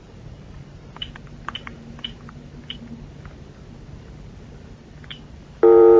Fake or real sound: fake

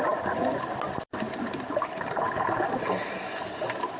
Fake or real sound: real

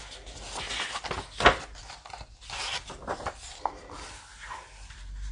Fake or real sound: real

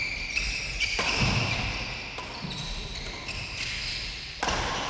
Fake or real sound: real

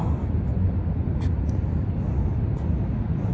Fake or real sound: real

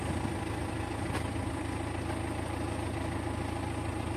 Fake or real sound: real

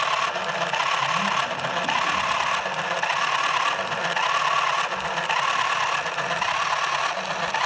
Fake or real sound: real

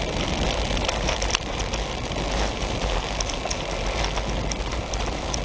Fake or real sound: real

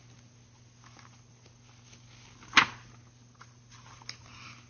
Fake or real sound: real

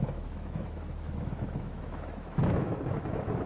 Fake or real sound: fake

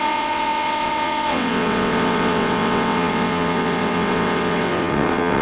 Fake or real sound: fake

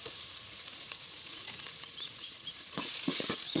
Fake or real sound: fake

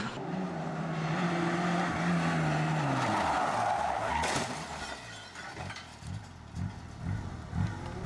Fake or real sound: real